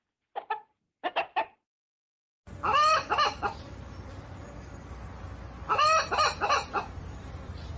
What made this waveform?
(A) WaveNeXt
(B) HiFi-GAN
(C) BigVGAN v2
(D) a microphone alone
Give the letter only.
D